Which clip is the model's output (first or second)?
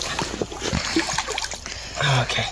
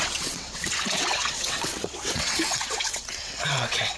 second